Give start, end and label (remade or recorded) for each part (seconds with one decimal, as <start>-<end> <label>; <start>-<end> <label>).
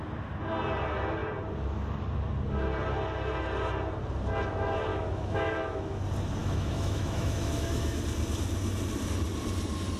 0.0-4.9 recorded; 4.9-6.0 remade; 6.0-6.4 recorded; 6.4-8.0 remade; 8.0-10.0 recorded